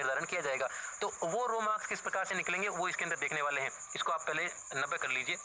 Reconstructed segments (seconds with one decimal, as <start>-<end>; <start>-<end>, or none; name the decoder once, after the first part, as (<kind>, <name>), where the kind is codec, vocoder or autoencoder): none